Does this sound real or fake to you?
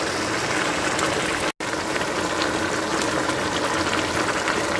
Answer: real